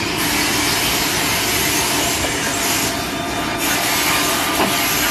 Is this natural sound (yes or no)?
yes